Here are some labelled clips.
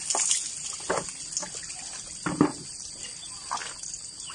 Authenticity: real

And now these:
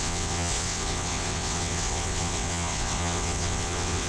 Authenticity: fake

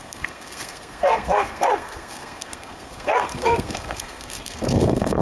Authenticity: fake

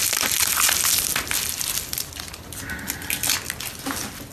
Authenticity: real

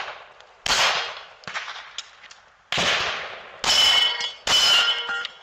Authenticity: real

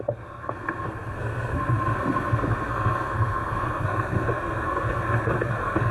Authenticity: fake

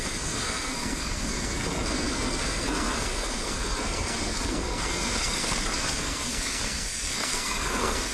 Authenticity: fake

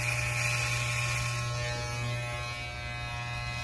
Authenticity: real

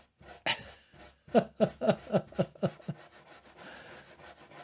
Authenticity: real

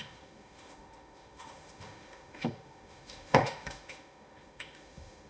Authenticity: fake